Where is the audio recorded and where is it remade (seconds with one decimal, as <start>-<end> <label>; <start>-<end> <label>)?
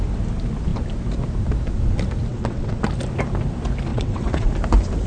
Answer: 0.0-2.3 recorded; 2.3-2.8 remade; 2.8-3.9 recorded; 3.9-4.5 remade; 4.5-5.1 recorded